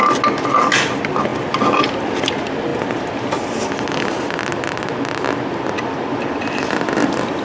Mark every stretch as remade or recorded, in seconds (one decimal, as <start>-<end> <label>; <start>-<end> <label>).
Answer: 0.0-7.4 recorded